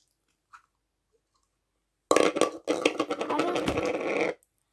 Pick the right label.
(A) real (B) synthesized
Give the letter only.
A